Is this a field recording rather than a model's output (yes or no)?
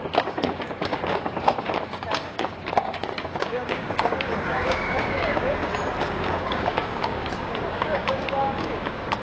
no